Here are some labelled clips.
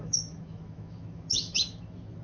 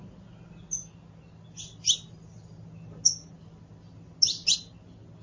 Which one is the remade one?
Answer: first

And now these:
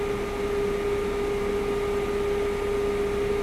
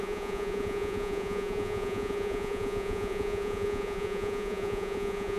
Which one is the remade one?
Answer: second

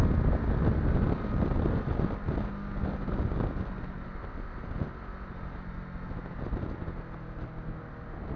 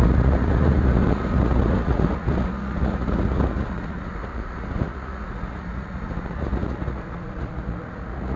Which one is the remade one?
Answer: second